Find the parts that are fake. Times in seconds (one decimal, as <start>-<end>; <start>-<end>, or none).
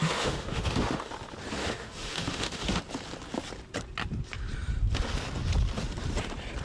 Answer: 0.0-1.1; 1.6-2.8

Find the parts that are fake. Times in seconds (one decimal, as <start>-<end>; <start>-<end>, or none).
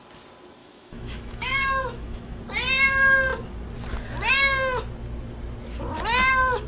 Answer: 0.6-2.4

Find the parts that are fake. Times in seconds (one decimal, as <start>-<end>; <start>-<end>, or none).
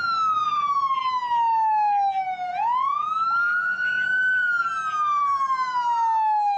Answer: 5.2-6.6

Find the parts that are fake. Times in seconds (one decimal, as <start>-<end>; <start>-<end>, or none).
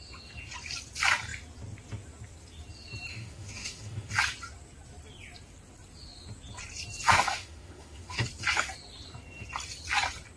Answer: 3.1-4.1; 7.1-8.2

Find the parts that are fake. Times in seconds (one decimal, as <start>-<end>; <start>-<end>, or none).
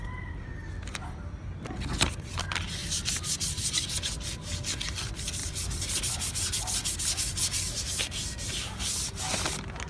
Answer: none